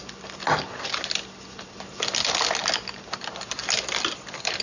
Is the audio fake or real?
real